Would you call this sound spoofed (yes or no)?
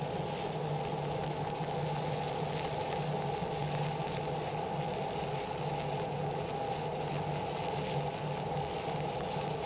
no